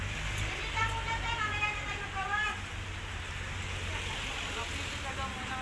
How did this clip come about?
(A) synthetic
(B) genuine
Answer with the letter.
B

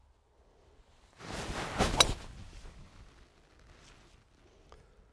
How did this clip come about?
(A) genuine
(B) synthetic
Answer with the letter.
A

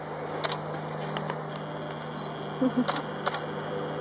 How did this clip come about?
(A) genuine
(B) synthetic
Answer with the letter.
A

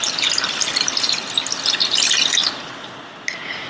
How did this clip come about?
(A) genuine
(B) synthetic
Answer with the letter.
A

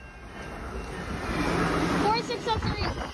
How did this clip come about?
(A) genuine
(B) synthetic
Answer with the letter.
A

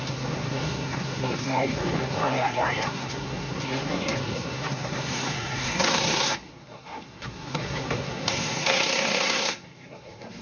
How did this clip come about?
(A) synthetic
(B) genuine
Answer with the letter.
A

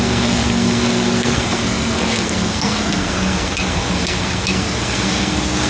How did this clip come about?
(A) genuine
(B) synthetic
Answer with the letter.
B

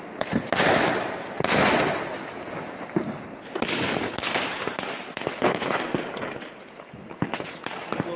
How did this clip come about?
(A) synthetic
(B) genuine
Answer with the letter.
B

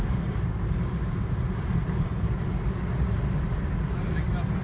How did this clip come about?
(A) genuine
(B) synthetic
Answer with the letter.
A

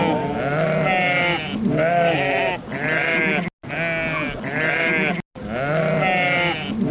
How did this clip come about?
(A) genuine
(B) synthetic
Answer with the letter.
A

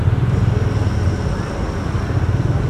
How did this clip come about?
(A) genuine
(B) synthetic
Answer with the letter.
A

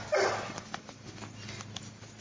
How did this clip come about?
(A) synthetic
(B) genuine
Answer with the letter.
B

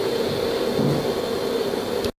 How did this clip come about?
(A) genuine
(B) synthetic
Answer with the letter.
A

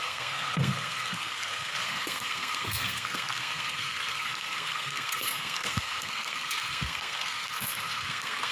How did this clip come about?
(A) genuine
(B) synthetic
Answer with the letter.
B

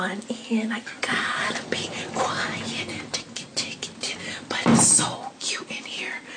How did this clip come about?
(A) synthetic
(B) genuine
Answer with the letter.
B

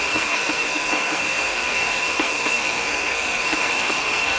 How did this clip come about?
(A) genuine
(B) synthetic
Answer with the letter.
B